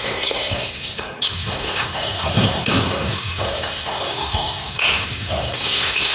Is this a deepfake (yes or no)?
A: yes